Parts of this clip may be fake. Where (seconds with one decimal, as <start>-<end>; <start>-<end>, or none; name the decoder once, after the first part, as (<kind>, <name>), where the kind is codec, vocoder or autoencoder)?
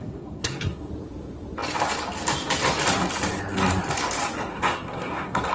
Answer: 0.0-0.9 (codec, SNAC); 4.5-5.5